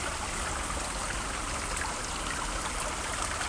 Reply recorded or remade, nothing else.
recorded